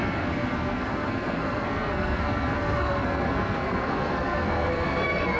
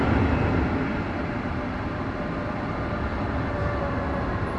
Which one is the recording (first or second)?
second